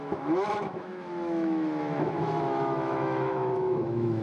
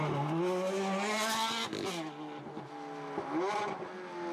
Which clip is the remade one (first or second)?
first